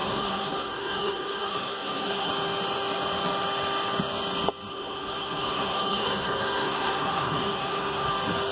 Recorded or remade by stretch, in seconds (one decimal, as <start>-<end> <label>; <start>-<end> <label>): 0.0-2.3 remade; 2.3-4.7 recorded; 4.7-8.1 remade; 8.1-8.5 recorded